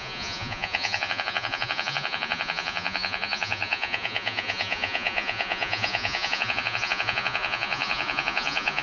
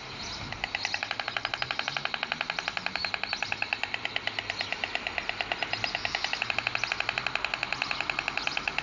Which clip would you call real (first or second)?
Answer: second